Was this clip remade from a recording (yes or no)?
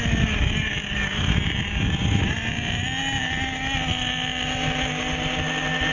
no